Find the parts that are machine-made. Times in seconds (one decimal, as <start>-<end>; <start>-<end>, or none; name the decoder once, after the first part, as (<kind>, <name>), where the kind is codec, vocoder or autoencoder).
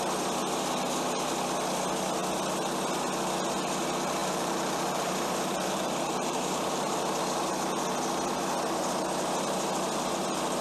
4.2-7.2 (vocoder, BigVGAN v2)